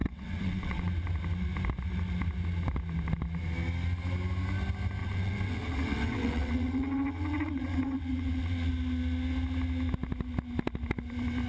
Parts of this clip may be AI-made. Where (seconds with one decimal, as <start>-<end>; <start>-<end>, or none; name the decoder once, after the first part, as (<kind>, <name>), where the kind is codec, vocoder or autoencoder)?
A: 0.0-0.9 (vocoder, WaveNeXt); 5.0-8.7